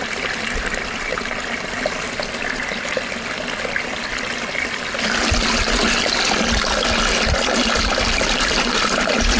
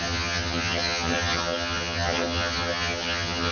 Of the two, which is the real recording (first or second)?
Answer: first